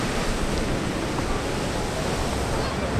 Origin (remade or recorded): recorded